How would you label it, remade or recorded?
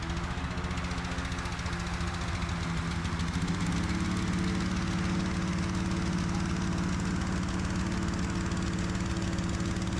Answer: recorded